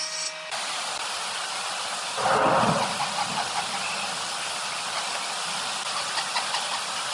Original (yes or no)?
yes